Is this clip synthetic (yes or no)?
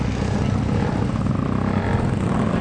no